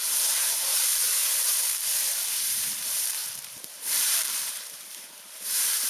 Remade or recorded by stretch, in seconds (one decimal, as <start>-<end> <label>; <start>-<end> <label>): 0.0-1.2 remade; 1.2-2.3 recorded; 2.3-5.9 remade

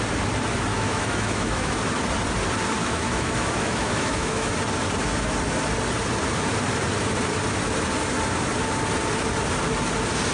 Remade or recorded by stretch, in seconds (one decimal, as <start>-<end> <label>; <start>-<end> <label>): 0.0-0.7 recorded; 0.7-1.8 remade; 1.8-2.8 recorded; 2.8-4.5 remade; 4.5-10.3 recorded

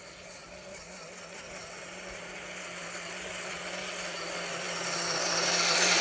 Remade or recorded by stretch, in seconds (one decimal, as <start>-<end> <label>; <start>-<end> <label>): 0.0-6.0 recorded